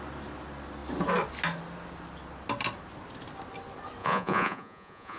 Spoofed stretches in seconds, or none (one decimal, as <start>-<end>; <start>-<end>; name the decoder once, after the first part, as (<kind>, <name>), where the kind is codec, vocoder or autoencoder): 4.0-5.2 (vocoder, Vocos)